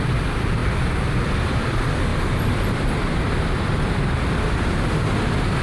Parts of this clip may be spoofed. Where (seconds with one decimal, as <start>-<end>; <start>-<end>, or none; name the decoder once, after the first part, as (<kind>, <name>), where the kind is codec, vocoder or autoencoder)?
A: 0.0-0.6 (vocoder, BigVGAN v2); 1.1-2.1; 2.7-5.6